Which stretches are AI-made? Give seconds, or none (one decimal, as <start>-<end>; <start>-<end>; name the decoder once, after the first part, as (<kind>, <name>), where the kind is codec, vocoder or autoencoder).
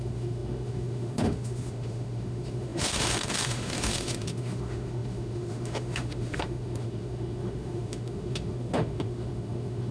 0.0-9.9 (autoencoder, DAC-VAE)